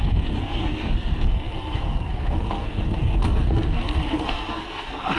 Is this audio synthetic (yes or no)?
yes